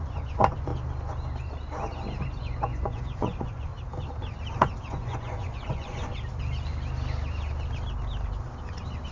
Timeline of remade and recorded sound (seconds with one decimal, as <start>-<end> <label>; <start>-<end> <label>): 0.0-0.7 remade; 0.7-2.4 recorded; 2.4-3.7 remade; 3.7-4.9 recorded; 4.9-6.1 remade; 6.1-9.1 recorded